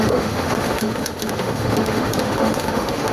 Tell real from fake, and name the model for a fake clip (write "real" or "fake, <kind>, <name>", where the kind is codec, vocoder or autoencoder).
fake, autoencoder, DAC-VAE